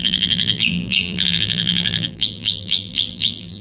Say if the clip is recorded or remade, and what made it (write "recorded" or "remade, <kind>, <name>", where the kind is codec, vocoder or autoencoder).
remade, vocoder, BigVGAN v2